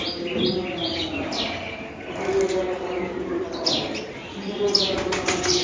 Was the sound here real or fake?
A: real